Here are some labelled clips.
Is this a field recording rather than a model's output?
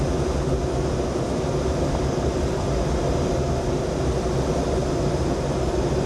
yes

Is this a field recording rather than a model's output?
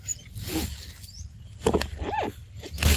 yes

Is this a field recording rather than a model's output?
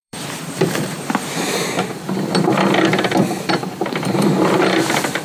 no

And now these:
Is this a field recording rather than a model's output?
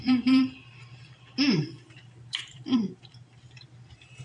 no